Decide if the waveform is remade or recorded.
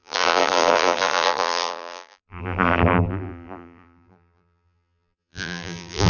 remade